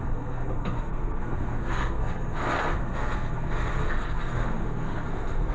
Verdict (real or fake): fake